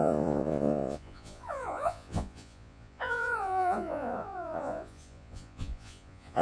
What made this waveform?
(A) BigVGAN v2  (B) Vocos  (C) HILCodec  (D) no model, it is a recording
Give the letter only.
B